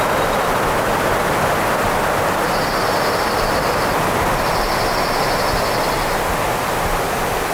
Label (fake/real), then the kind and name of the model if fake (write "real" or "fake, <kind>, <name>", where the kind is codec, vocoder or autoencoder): real